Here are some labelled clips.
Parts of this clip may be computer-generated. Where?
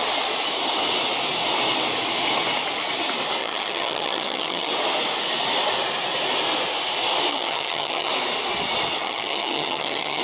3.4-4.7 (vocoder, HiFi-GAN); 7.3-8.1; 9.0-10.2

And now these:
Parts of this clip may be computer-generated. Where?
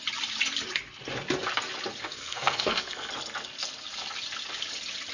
2.0-3.1 (codec, SNAC)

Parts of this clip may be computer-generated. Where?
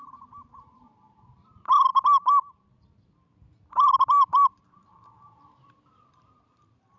0.0-7.0 (vocoder, BigVGAN v2)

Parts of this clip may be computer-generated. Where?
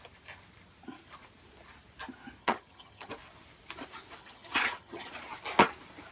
2.4-3.1 (vocoder, HiFi-GAN); 4.2-5.1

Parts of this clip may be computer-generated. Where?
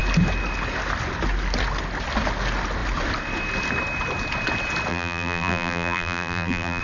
4.9-6.8 (vocoder, BigVGAN v2)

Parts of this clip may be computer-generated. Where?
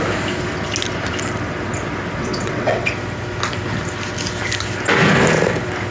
2.2-2.9 (vocoder, WaveNeXt)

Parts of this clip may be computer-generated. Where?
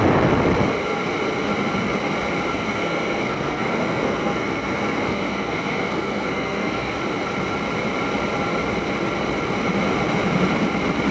2.5-7.0 (codec, SNAC)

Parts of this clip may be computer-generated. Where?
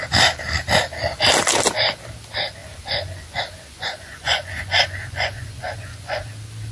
2.6-6.3 (vocoder, Vocos)